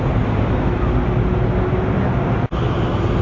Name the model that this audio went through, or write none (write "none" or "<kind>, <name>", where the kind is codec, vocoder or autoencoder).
none